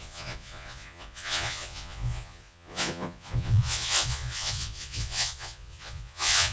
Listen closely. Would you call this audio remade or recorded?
remade